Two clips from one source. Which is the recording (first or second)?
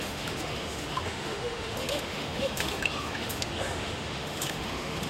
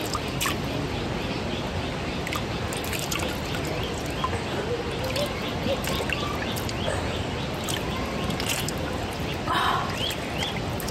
second